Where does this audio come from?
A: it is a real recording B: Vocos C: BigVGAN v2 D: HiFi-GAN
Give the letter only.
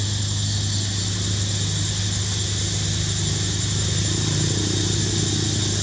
A